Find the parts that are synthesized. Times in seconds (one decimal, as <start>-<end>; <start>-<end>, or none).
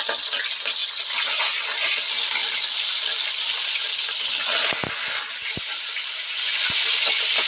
none